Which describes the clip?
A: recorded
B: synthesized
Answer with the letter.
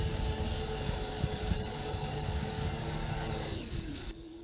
B